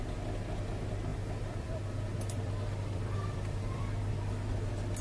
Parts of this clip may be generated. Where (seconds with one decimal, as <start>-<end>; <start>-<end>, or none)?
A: 1.1-4.1

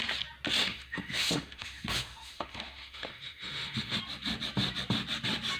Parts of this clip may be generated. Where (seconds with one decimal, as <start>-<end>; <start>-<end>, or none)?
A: 0.6-4.0

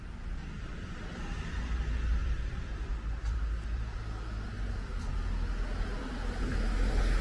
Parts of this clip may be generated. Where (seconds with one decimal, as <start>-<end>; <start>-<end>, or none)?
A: 2.2-3.9

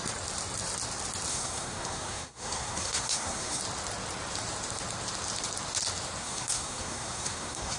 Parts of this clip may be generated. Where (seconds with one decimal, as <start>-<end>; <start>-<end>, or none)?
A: 1.3-3.6; 6.2-7.8

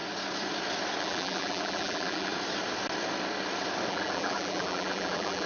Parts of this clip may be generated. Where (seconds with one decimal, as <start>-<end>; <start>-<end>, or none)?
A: 1.0-2.3; 3.9-5.5

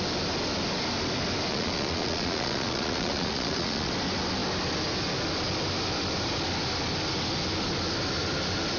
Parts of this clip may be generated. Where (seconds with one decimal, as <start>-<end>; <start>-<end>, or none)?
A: 1.5-3.9

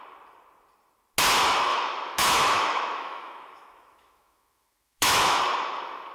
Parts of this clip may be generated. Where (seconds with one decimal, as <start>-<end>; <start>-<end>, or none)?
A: 1.7-5.4